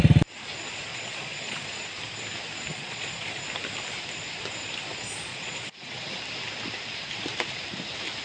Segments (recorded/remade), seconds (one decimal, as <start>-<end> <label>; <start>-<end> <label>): 0.0-0.9 recorded; 0.9-1.7 remade; 1.7-2.7 recorded; 2.7-3.4 remade; 3.4-5.3 recorded; 5.3-6.2 remade; 6.2-8.2 recorded